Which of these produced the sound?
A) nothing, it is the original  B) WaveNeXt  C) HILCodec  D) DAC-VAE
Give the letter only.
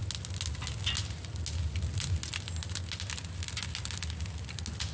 A